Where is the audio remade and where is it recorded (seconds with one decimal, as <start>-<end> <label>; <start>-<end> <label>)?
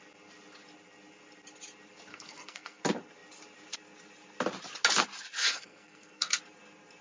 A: 0.0-2.1 recorded; 2.1-2.8 remade; 2.8-5.4 recorded; 5.4-6.4 remade; 6.4-7.0 recorded